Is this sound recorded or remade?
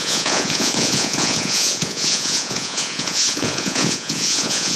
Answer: remade